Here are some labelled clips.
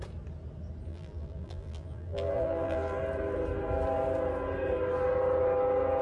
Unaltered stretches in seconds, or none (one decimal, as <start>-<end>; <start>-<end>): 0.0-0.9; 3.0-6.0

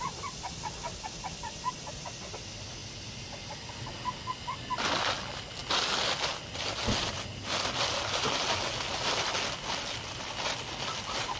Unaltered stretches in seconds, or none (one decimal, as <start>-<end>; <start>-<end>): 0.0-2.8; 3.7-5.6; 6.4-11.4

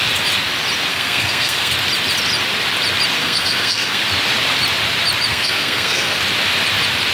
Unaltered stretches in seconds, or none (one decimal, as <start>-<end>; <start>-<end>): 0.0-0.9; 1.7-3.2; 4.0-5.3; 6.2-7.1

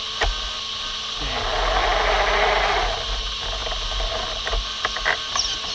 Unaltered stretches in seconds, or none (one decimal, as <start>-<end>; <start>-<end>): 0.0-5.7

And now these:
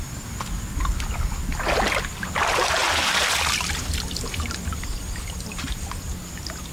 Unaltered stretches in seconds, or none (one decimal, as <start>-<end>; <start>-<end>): 0.0-6.7

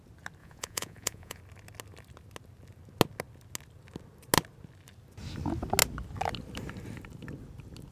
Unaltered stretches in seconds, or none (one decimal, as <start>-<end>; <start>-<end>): 0.0-0.4; 1.4-7.9